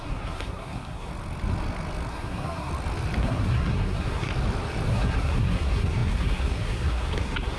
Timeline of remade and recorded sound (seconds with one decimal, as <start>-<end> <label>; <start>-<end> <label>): 0.0-1.1 remade; 1.1-2.1 recorded; 2.1-2.7 remade; 2.7-3.2 recorded; 3.2-4.3 remade; 4.3-4.9 recorded; 4.9-7.6 remade